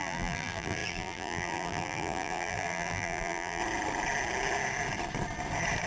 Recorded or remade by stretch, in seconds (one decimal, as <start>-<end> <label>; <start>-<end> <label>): 0.0-3.6 remade; 3.6-5.9 recorded